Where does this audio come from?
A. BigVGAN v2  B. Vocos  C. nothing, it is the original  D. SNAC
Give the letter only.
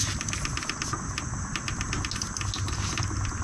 C